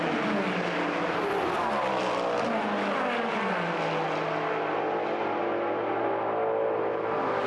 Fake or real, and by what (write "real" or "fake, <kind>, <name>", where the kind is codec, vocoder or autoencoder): real